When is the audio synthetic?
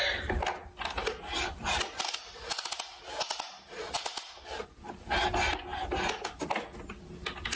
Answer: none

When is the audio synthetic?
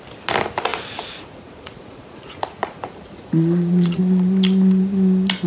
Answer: 0.7-4.0 (vocoder, Vocos)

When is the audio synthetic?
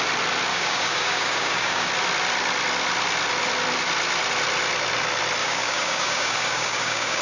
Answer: 0.5-1.9 (codec, DAC); 5.4-7.2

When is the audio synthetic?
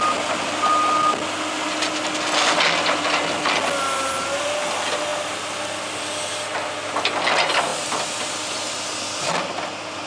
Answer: none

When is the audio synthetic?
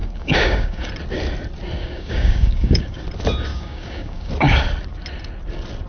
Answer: 0.0-0.9 (codec, DAC); 1.8-3.0; 3.5-4.3